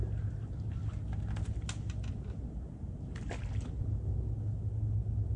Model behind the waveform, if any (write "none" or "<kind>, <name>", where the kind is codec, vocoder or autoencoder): none